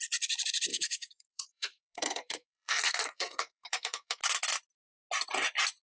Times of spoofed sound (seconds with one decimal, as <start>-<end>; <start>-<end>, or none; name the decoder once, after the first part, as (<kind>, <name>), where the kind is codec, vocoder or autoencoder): 0.7-4.2 (codec, SNAC)